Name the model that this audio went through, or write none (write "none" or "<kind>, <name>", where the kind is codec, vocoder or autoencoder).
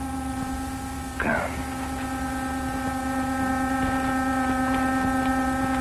none